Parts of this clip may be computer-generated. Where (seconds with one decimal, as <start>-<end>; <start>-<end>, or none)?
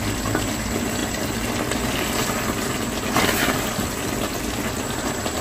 1.0-2.3